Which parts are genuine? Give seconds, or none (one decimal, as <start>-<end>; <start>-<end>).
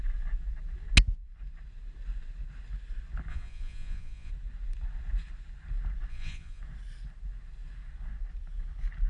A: 0.0-3.3; 4.3-6.1; 6.6-9.1